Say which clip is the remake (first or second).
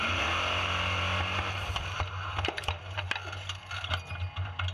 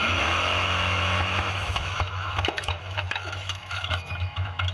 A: second